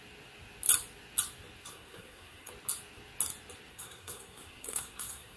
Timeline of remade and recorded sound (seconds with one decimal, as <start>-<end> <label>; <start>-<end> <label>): 0.0-1.7 recorded; 1.7-2.5 remade; 2.5-3.7 recorded; 3.7-5.4 remade